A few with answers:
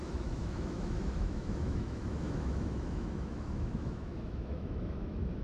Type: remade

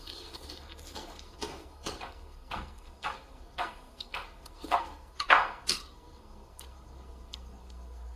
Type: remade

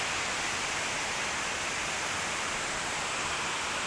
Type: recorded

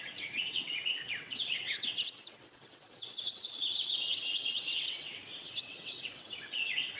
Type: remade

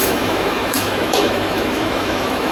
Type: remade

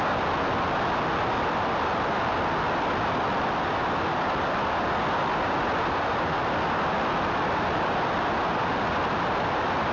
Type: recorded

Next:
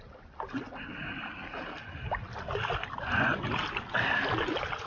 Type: recorded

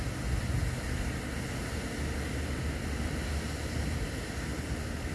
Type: recorded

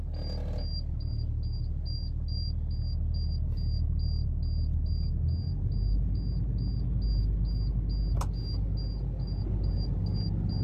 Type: recorded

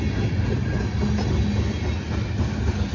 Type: recorded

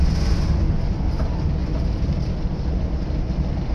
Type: recorded